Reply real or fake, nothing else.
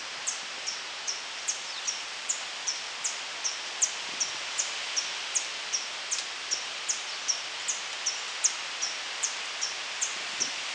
real